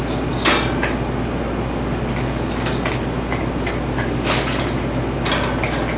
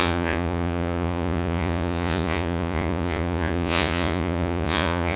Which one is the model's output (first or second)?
second